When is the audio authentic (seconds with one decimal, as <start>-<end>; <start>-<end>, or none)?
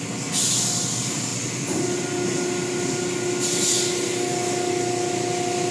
0.0-5.7